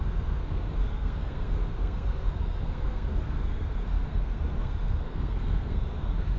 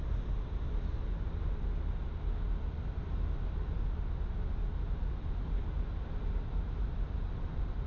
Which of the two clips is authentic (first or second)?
second